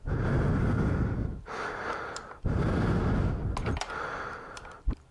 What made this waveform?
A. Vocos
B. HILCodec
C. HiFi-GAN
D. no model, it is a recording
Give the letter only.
D